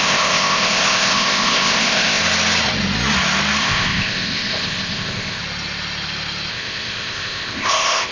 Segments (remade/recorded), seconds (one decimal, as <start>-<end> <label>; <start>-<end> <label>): 0.0-2.2 remade; 2.2-3.6 recorded; 3.6-5.4 remade; 5.4-6.5 recorded; 6.5-8.1 remade

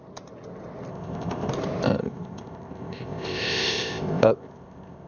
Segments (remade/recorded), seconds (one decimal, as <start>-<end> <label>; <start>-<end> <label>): 0.0-0.9 recorded; 0.9-1.5 remade; 1.5-2.0 recorded; 2.0-5.1 remade